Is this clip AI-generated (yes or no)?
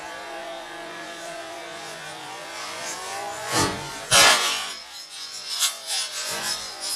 yes